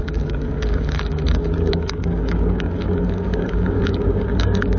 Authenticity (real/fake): fake